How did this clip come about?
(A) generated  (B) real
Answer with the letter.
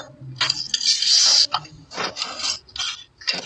B